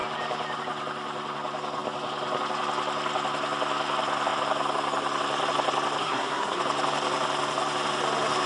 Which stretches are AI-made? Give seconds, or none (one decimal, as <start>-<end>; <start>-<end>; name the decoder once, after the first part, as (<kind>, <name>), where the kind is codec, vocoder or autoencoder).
6.0-6.6 (codec, SNAC)